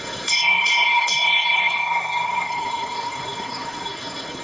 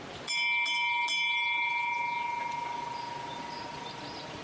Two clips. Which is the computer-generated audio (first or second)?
first